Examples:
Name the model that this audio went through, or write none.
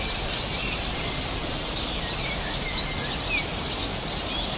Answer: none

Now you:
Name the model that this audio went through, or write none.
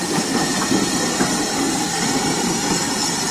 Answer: none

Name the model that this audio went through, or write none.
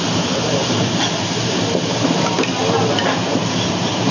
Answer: vocoder, BigVGAN v2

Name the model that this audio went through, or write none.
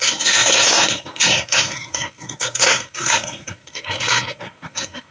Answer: codec, SNAC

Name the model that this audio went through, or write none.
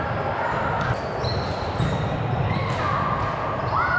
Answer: none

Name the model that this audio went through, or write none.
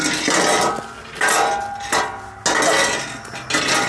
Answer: none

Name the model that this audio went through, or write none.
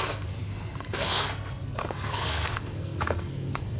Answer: codec, SNAC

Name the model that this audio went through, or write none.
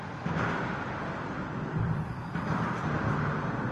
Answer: none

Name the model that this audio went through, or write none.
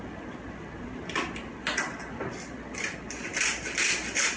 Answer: none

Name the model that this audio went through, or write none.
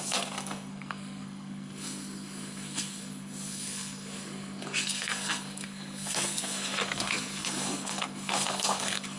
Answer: codec, SNAC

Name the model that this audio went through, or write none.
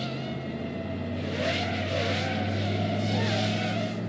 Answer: none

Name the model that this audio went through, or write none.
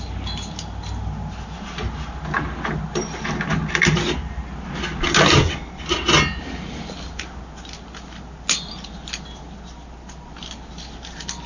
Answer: none